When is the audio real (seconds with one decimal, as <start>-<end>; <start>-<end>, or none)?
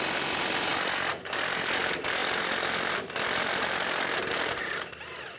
0.0-5.4